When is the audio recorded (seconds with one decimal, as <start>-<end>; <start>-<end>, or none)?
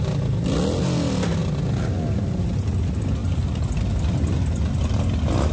0.0-5.5